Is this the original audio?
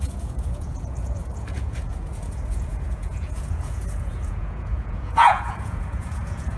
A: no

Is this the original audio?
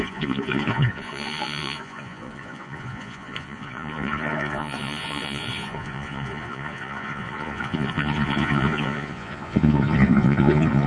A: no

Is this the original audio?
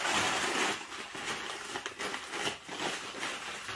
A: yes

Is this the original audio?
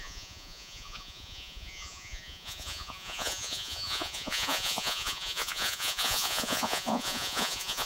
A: no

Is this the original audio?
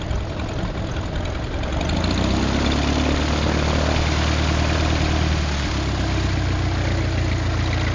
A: yes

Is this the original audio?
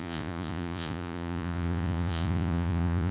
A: no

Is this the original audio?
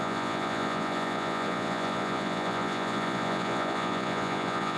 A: no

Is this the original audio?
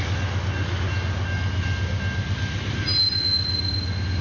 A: yes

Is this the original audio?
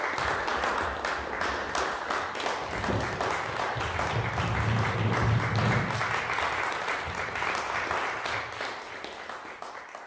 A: yes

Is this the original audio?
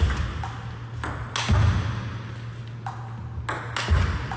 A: yes